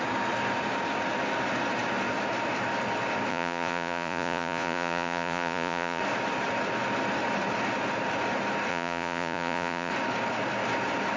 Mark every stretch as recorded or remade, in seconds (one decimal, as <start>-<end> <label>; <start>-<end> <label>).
0.0-3.3 recorded; 3.3-6.0 remade; 6.0-8.7 recorded; 8.7-9.9 remade; 9.9-11.2 recorded